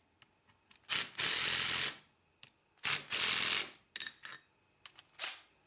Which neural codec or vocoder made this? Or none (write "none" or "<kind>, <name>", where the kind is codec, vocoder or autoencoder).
none